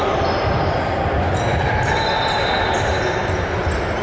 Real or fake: real